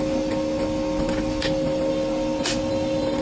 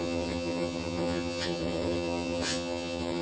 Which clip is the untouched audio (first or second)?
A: first